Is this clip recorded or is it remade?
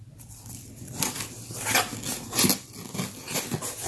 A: recorded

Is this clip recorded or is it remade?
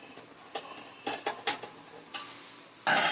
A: recorded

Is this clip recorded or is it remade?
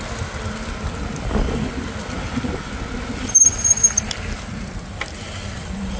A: recorded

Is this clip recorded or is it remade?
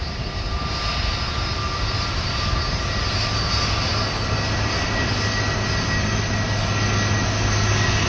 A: recorded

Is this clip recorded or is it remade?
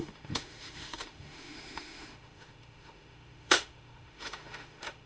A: remade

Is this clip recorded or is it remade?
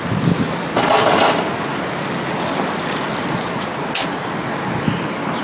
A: recorded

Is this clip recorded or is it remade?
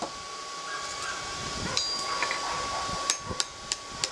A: recorded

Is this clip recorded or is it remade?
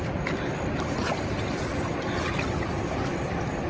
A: recorded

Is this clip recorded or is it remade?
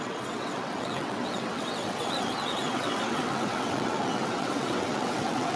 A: remade